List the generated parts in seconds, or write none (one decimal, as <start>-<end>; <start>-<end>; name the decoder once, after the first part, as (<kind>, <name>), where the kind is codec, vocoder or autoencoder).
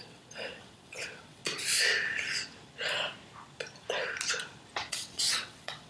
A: 0.0-1.4 (vocoder, WaveNeXt); 4.9-5.9